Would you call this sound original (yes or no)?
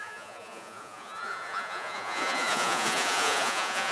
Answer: no